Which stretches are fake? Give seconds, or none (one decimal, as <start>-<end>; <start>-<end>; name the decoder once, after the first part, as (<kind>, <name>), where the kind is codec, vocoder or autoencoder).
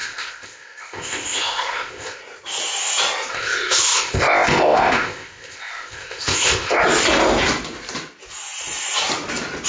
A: 0.0-2.2 (codec, ZipCodec); 3.3-6.8